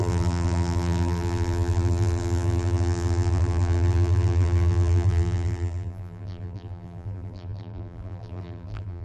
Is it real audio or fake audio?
fake